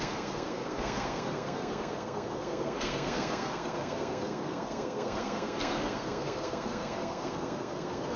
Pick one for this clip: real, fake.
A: fake